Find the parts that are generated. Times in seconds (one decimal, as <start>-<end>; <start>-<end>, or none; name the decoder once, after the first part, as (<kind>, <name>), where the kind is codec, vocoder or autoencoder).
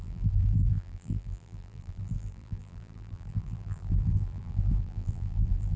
0.0-5.8 (vocoder, BigVGAN v2)